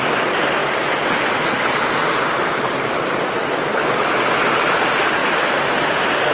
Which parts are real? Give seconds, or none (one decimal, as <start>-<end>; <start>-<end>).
0.0-6.3